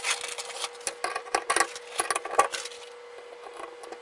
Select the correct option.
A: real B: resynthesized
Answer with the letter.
A